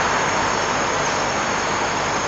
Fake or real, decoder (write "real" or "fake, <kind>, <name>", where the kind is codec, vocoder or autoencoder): real